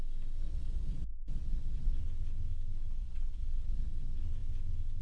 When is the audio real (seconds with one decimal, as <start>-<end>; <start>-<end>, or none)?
0.0-0.4; 2.0-3.0; 3.9-5.0